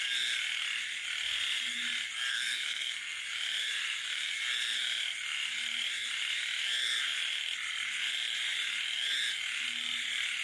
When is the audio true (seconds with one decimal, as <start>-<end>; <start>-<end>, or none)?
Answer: 0.0-2.3; 3.2-10.4

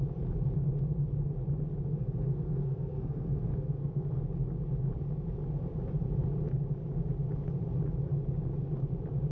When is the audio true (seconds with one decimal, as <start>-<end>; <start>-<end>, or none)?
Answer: 0.0-1.9; 4.2-9.3